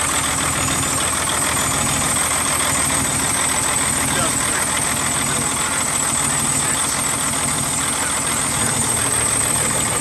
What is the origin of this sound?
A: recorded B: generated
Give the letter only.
A